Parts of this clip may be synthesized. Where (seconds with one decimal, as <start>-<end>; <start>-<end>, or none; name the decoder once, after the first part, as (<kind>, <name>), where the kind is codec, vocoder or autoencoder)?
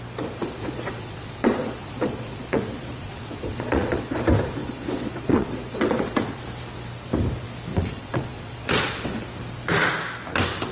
0.4-4.1 (vocoder, Vocos); 4.6-6.4; 7.7-9.2